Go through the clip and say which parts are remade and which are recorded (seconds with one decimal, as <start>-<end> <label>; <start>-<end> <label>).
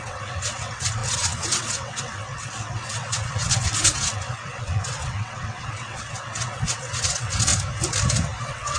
0.0-7.5 remade; 7.5-8.4 recorded; 8.4-8.8 remade